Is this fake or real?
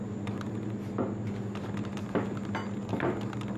real